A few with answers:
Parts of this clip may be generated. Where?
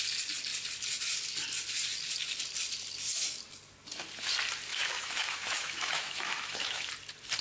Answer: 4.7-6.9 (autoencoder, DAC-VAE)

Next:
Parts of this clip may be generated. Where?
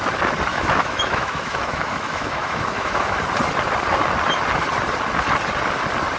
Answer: 0.5-3.2 (autoencoder, DAC-VAE)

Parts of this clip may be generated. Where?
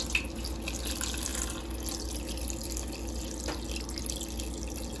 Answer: none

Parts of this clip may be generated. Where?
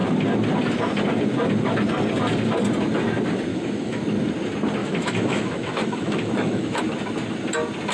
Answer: 3.5-4.0 (autoencoder, DAC-VAE); 4.8-6.8